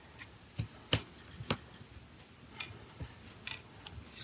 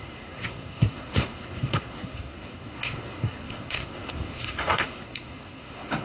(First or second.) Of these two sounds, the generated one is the second